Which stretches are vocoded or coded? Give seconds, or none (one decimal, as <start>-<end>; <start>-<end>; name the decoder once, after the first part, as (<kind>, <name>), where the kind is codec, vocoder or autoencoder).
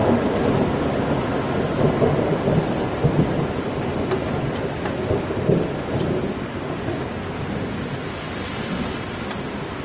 none